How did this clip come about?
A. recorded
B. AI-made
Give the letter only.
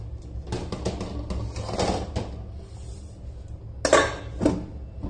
A